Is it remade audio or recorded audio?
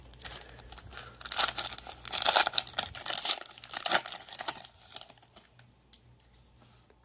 recorded